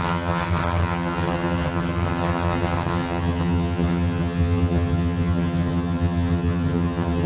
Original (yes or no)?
no